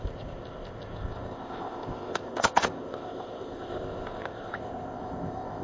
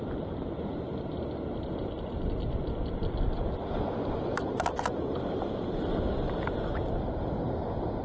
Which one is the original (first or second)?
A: second